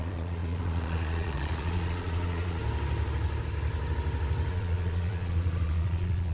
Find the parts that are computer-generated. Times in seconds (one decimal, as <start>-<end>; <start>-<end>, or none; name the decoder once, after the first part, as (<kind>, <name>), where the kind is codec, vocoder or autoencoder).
0.0-2.6 (vocoder, Vocos); 4.5-6.3